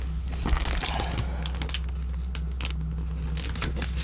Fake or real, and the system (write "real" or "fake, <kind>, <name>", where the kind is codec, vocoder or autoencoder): real